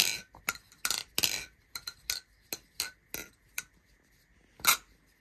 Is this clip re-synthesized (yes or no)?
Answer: no